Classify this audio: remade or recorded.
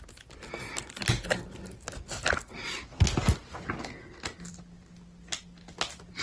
recorded